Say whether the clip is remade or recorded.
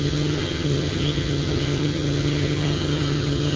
remade